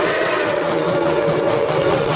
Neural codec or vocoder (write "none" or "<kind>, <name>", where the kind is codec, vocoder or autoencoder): vocoder, WaveNeXt